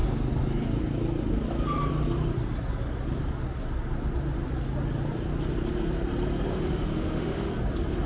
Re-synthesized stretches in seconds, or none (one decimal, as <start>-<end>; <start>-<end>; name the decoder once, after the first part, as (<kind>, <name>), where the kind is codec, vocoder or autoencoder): 6.5-7.5 (autoencoder, DAC-VAE)